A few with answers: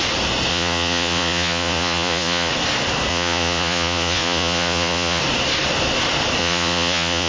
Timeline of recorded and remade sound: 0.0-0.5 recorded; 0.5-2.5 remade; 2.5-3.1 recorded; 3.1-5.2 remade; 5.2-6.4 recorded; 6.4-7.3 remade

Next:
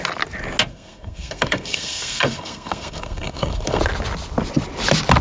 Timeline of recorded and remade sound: 0.0-0.7 recorded; 0.7-3.8 remade; 3.8-5.2 recorded

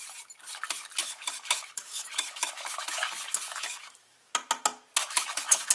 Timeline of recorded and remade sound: 0.0-1.0 recorded; 1.0-4.3 remade; 4.3-5.0 recorded; 5.0-5.7 remade

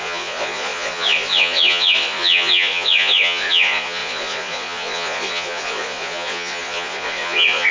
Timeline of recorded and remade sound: 0.0-7.7 remade

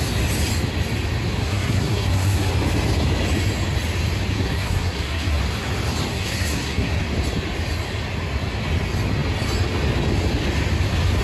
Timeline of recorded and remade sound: 0.0-1.4 recorded; 1.4-2.5 remade; 2.5-4.3 recorded; 4.3-5.4 remade; 5.4-6.1 recorded; 6.1-7.0 remade; 7.0-11.2 recorded